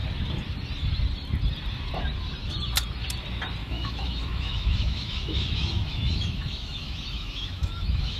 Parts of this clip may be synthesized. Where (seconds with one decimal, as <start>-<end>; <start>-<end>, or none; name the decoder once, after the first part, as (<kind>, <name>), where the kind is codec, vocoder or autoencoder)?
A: 3.6-8.2 (autoencoder, DAC-VAE)